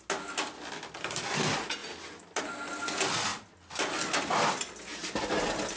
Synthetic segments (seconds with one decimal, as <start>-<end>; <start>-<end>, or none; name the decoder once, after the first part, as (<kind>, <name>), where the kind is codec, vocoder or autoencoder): none